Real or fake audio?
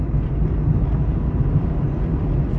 real